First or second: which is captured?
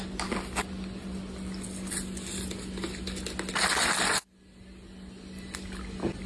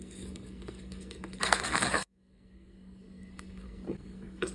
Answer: first